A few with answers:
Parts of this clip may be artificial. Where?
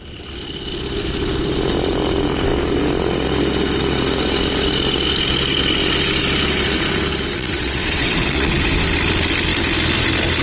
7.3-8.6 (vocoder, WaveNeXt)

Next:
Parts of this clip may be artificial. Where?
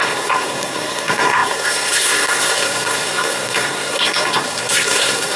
0.0-5.4 (codec, SNAC)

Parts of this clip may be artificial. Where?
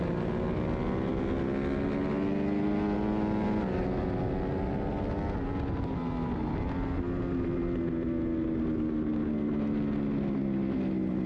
none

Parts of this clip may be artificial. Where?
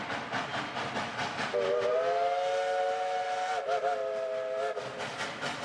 none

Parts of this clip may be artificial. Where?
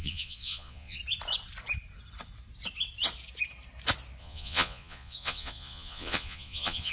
0.0-1.0 (vocoder, Vocos); 4.2-6.9